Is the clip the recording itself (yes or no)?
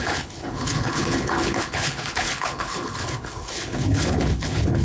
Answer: no